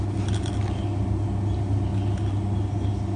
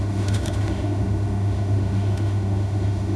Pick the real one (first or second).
first